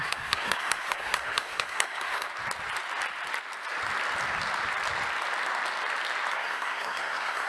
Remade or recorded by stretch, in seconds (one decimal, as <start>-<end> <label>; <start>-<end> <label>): 0.0-2.3 remade; 2.3-6.3 recorded; 6.3-7.5 remade